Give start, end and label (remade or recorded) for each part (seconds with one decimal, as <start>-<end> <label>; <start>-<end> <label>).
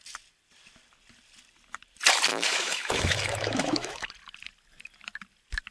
0.0-2.3 recorded; 2.3-4.1 remade; 4.1-5.7 recorded